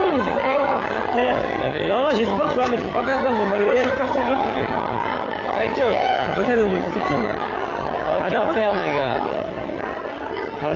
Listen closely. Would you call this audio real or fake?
fake